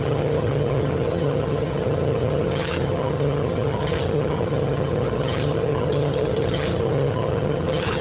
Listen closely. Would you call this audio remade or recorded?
remade